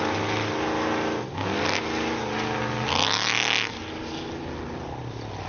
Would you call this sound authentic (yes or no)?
yes